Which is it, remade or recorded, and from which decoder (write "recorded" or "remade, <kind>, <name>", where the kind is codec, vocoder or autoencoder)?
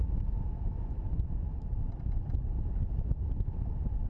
recorded